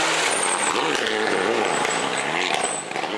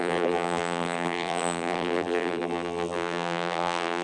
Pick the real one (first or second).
first